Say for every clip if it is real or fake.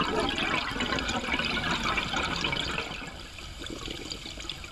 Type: real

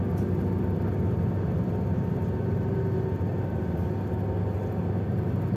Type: real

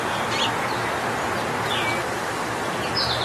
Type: real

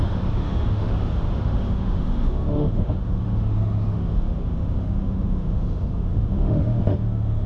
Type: fake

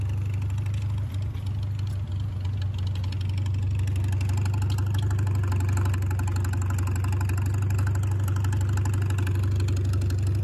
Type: real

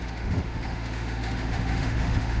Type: fake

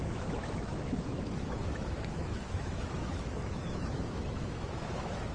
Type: fake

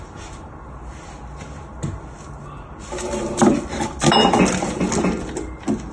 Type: real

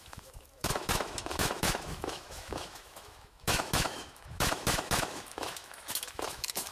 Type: fake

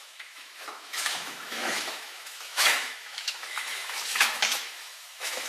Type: fake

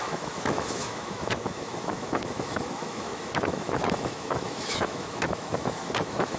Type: fake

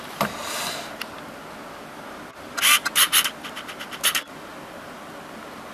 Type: real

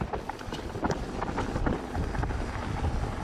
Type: real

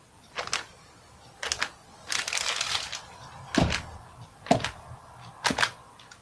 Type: real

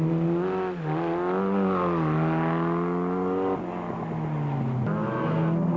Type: real